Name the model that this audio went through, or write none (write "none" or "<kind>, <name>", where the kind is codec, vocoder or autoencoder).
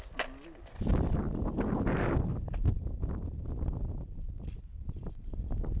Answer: none